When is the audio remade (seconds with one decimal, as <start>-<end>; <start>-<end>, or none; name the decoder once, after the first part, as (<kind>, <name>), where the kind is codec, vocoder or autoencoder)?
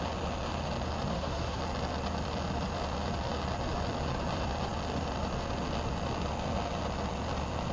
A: 1.1-1.6 (codec, SNAC)